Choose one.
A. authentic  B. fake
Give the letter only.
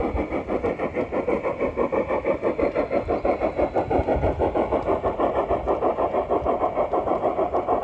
A